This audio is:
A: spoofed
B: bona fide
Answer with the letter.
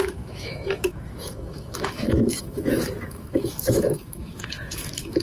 A